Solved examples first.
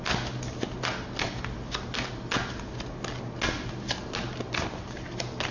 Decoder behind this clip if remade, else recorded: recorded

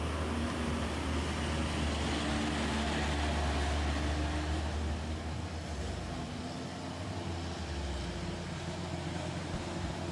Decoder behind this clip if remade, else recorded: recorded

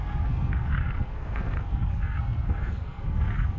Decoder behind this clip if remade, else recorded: remade, codec, SNAC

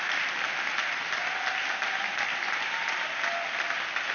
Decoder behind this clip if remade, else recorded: recorded